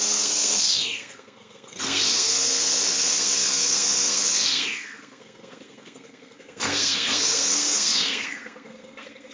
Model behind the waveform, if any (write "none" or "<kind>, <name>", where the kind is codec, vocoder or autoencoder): codec, SNAC